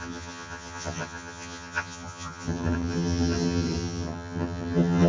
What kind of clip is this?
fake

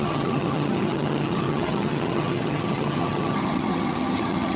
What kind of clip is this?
fake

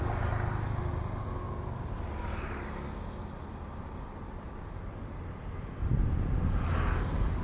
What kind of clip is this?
real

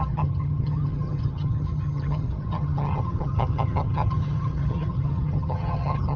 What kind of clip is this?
fake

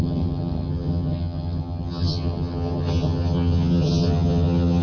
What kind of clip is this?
fake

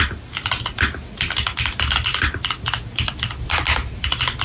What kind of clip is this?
real